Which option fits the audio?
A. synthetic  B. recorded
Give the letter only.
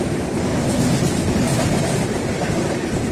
A